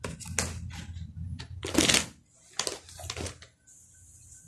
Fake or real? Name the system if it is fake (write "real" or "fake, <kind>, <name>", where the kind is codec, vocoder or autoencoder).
real